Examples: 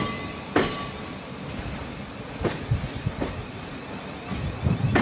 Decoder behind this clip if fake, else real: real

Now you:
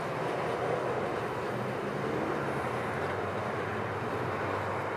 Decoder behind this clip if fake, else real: real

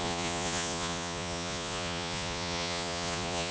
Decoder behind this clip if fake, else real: fake, vocoder, Vocos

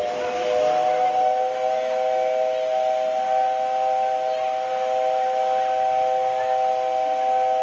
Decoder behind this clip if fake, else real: real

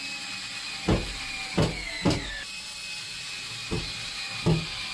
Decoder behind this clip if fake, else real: real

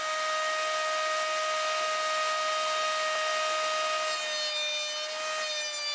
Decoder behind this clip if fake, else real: real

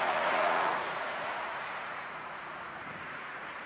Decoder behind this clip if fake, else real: fake, vocoder, Vocos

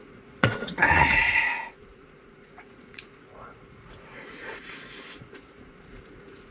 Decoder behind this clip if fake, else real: fake, vocoder, Vocos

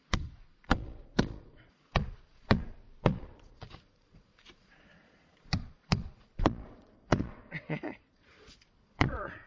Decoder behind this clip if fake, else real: fake, vocoder, Vocos